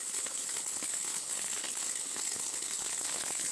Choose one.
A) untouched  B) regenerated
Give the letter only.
B